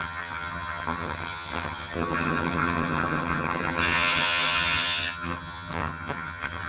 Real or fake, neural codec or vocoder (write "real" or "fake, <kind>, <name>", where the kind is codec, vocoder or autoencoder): fake, vocoder, HiFi-GAN